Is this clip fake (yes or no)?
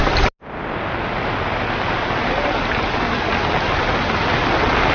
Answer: no